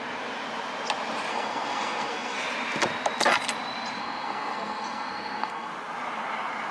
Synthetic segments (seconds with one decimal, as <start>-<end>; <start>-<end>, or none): 1.3-2.4; 4.0-5.7